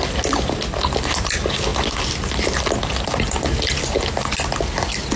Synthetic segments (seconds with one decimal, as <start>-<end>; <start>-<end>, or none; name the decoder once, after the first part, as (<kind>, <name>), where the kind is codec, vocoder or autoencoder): none

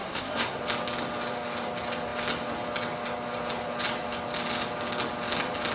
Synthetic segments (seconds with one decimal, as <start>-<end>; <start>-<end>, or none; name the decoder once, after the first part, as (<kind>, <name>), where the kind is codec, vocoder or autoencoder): 0.0-0.6 (codec, SNAC)

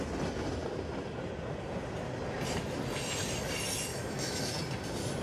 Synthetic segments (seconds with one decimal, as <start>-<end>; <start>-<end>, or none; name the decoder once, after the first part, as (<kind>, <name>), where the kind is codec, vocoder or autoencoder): 3.9-4.5 (autoencoder, DAC-VAE)

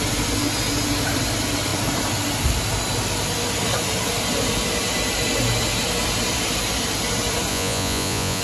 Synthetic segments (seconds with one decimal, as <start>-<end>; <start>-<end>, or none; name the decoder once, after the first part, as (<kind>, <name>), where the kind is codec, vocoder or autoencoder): 7.5-8.4 (vocoder, Vocos)